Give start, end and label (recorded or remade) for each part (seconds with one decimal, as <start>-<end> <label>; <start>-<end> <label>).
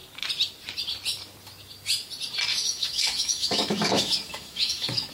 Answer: 0.0-2.5 recorded; 2.5-5.1 remade